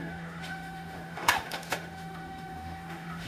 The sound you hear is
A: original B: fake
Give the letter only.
B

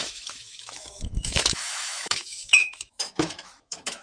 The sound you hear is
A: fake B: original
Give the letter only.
A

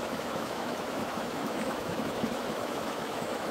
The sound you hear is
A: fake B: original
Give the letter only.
A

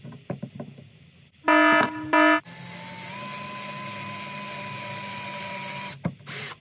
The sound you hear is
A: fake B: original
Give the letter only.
B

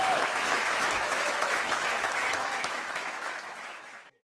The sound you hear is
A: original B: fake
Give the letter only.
B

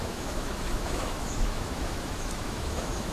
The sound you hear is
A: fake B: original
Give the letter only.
A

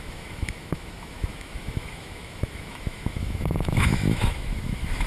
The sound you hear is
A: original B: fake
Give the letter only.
B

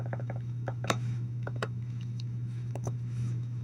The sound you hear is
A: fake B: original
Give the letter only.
A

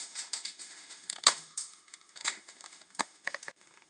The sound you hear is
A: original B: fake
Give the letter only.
B